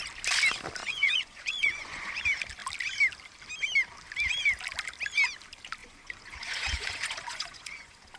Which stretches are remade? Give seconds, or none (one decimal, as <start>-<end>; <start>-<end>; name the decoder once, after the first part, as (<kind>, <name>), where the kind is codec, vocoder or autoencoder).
0.8-2.2 (vocoder, Vocos); 5.8-8.2